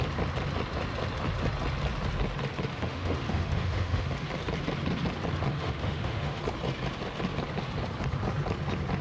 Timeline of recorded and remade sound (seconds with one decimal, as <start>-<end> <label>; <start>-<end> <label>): 0.0-2.7 recorded; 2.7-4.1 remade; 4.1-5.5 recorded; 5.5-6.4 remade; 6.4-9.0 recorded